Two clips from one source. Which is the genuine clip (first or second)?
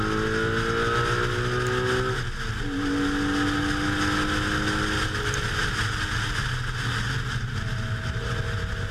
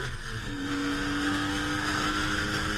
first